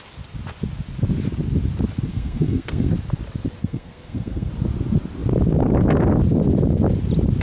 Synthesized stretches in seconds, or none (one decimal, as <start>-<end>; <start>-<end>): 2.1-2.9; 3.6-4.5